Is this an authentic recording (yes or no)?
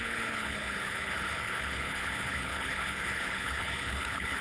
no